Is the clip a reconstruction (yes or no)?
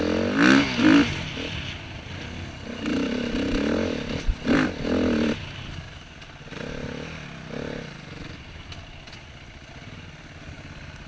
no